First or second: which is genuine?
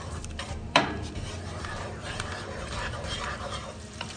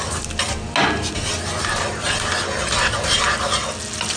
second